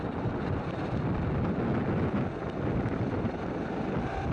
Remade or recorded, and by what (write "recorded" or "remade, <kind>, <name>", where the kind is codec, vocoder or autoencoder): recorded